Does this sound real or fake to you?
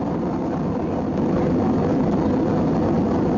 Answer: real